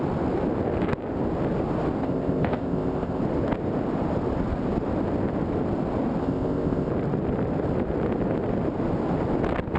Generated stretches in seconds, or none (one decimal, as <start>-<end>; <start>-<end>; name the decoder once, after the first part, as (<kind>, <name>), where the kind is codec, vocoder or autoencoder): 2.0-3.2 (codec, ZipCodec); 6.2-6.9